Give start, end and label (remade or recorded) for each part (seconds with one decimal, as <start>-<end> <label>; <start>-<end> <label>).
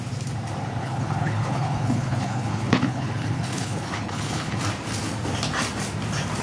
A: 0.0-0.8 recorded; 0.8-4.6 remade; 4.6-6.4 recorded